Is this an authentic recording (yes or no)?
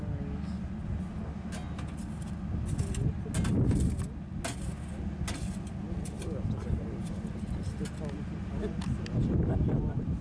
yes